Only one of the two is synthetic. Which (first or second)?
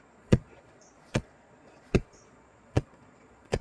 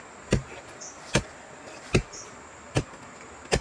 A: first